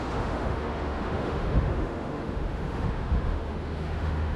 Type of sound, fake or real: fake